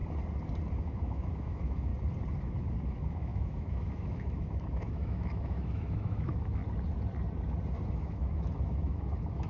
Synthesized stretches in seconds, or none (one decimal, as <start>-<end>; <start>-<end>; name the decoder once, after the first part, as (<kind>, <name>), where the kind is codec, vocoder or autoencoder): 0.8-1.9 (autoencoder, DAC-VAE); 2.4-6.6; 7.9-9.5